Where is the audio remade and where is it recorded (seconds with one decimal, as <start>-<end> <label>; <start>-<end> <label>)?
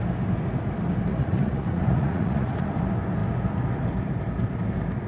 0.0-1.1 recorded; 1.1-2.7 remade; 2.7-5.1 recorded